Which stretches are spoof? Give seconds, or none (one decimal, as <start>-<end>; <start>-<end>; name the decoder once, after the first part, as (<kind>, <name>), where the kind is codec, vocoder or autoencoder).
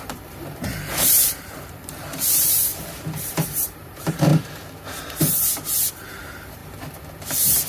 0.0-2.7 (vocoder, BigVGAN v2); 3.3-4.3; 5.9-6.6